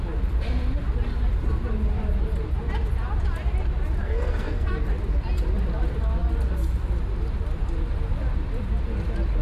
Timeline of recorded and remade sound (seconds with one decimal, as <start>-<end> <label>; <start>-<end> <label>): 0.0-4.0 recorded; 4.0-4.8 remade; 4.8-9.4 recorded